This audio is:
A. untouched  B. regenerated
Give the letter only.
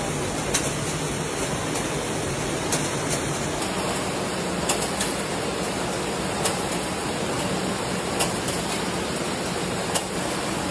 A